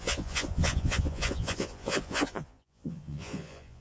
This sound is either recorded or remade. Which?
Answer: remade